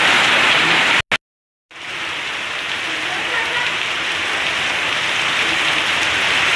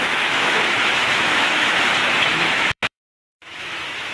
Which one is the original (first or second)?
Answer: first